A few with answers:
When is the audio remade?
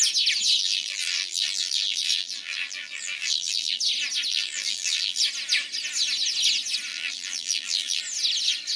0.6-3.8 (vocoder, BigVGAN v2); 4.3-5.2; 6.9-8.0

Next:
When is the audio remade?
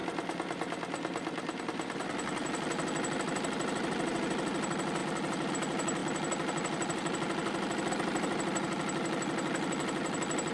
5.0-5.5 (vocoder, BigVGAN v2)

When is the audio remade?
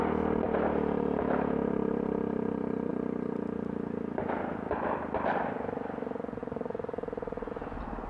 6.4-7.5 (vocoder, BigVGAN v2)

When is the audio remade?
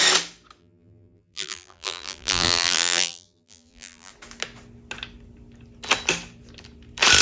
0.6-4.1 (vocoder, BigVGAN v2)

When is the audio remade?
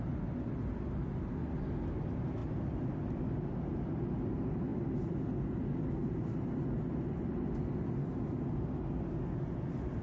none